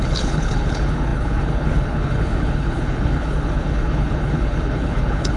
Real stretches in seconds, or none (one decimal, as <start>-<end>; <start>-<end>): none